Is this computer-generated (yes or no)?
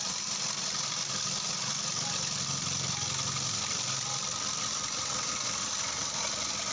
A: no